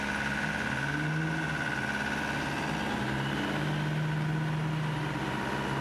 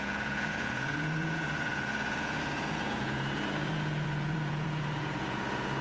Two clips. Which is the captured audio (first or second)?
first